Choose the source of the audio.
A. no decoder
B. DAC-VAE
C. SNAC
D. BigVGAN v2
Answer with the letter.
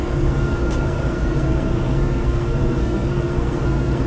C